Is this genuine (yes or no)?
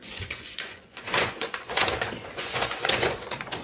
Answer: no